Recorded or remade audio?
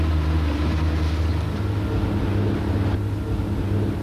recorded